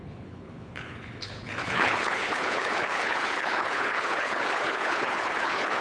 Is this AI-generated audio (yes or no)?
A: yes